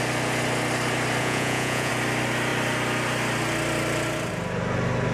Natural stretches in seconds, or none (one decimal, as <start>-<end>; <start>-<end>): 0.0-1.2; 1.9-5.1